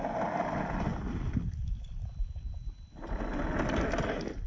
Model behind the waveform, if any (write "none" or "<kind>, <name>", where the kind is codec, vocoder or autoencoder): vocoder, BigVGAN v2